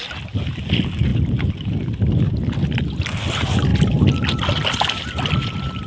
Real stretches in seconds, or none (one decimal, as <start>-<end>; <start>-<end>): 0.0-5.9